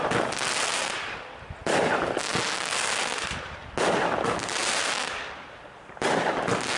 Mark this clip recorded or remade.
recorded